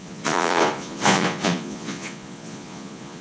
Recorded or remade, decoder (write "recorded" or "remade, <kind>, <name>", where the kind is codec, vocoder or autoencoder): remade, vocoder, Vocos